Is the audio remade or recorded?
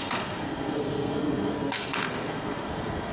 remade